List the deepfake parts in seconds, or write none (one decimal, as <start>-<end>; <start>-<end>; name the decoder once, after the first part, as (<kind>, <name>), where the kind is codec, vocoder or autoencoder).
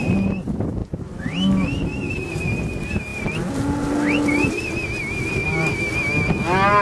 none